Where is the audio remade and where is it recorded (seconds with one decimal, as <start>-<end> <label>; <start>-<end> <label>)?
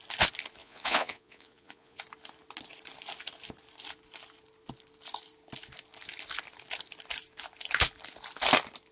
0.0-0.6 recorded; 0.6-2.0 remade; 2.0-8.9 recorded